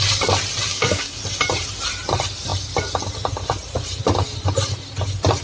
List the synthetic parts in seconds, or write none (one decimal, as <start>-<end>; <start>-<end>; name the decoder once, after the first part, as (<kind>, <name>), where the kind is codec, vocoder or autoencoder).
0.7-1.2 (codec, DAC)